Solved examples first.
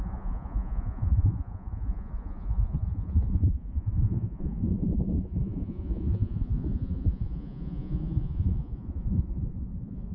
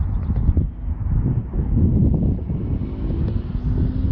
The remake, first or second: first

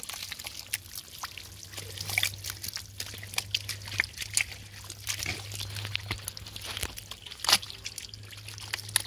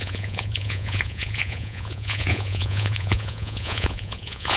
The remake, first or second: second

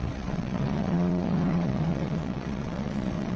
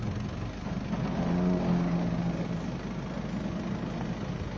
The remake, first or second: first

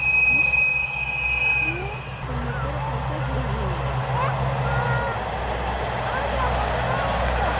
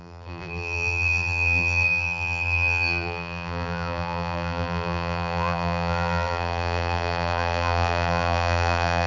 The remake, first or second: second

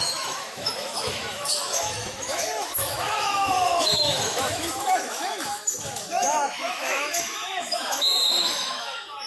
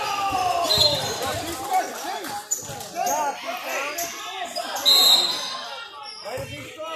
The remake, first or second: first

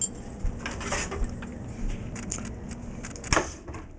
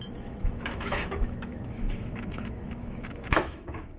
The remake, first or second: second